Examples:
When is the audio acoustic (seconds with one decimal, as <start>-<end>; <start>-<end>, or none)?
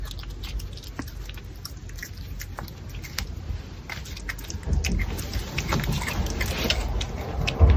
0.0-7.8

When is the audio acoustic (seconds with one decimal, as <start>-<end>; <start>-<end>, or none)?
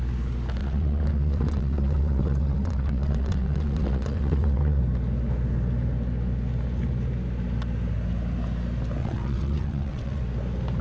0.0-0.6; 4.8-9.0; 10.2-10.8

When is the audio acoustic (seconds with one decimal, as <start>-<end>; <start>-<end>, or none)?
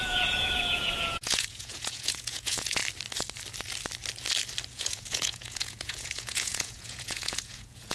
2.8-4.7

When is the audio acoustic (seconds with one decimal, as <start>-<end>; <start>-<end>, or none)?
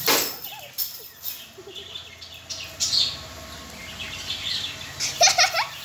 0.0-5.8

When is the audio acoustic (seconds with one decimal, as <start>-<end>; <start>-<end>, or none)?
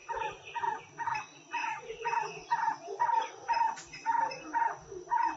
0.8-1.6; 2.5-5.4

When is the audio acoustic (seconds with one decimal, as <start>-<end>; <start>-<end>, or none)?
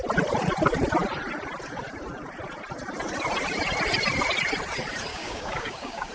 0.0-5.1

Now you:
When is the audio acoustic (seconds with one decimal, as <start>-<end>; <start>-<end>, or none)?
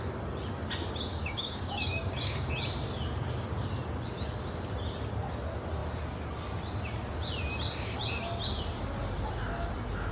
0.0-1.1; 2.5-10.1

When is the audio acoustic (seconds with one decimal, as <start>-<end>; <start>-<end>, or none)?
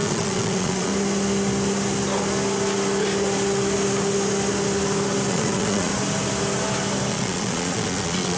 0.9-5.3; 5.9-7.1